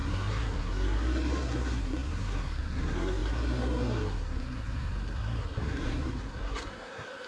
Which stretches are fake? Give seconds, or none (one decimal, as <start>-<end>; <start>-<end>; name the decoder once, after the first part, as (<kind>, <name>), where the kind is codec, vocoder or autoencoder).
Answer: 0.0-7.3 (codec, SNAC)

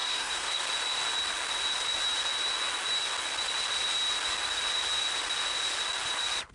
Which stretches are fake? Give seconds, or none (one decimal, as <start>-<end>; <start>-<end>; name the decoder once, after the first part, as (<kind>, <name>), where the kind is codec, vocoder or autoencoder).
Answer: 0.0-0.6 (codec, SNAC)

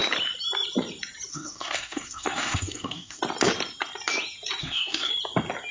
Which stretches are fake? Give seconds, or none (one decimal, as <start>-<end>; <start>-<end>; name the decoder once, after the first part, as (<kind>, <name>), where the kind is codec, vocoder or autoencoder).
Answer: 1.3-3.2 (codec, SNAC); 4.6-5.1